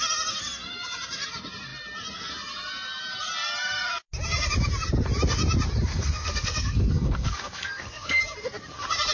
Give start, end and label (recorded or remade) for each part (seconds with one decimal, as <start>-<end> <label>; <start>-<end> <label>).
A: 0.0-5.9 recorded; 5.9-8.2 remade; 8.2-9.1 recorded